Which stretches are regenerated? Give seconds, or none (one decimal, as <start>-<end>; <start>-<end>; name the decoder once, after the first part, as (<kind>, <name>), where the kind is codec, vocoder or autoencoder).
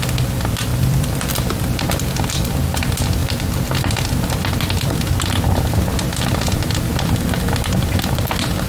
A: 0.7-2.0 (vocoder, BigVGAN v2)